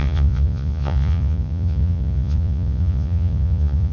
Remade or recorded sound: remade